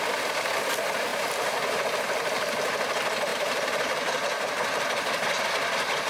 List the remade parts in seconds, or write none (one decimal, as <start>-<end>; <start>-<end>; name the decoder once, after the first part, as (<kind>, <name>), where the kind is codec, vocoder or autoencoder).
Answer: 3.3-5.4 (vocoder, BigVGAN v2)